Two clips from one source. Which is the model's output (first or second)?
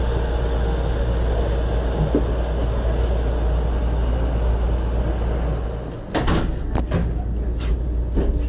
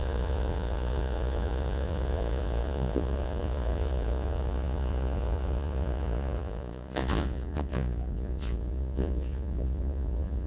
second